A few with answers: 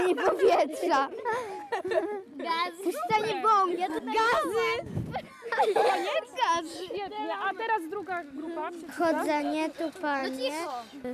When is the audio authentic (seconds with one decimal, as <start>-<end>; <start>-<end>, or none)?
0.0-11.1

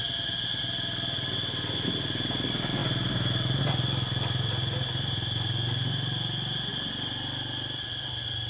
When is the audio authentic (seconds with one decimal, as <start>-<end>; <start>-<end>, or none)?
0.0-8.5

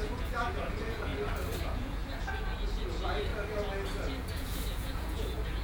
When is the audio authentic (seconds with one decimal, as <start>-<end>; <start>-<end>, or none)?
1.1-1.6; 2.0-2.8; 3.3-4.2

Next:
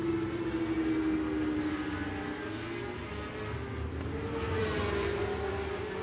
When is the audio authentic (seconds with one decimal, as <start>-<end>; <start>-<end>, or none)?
0.6-4.6; 5.2-6.0

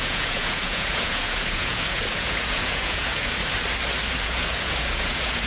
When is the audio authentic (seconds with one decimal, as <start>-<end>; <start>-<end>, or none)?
3.4-4.2